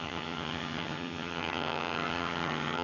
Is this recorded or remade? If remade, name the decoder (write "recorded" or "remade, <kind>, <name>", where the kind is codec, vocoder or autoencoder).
remade, vocoder, HiFi-GAN